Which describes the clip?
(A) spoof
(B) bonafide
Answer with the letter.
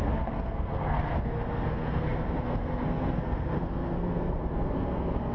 A